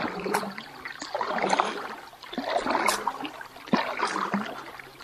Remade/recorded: recorded